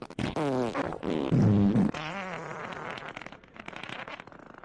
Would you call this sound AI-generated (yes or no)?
no